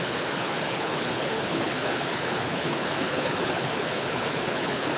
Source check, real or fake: fake